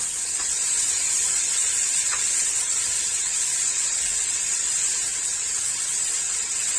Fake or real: fake